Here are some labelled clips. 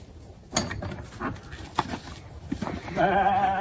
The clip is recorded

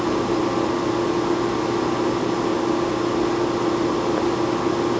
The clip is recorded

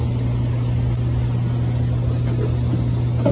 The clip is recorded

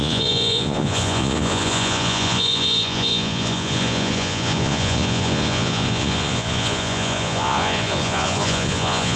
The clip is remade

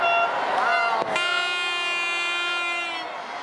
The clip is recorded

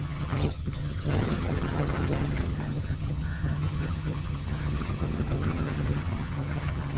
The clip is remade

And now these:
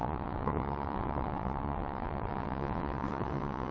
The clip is remade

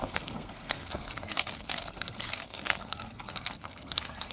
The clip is remade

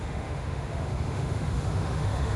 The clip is remade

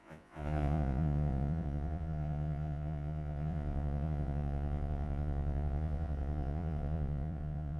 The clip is remade